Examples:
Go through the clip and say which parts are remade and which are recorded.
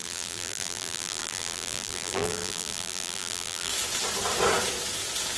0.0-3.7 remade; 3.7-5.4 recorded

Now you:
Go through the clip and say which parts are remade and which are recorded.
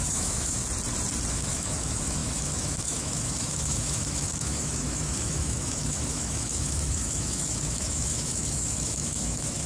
0.0-0.6 remade; 0.6-1.3 recorded; 1.3-9.7 remade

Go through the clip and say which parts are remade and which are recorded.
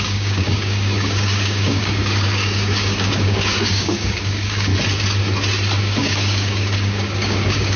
0.0-4.7 remade; 4.7-5.8 recorded; 5.8-7.8 remade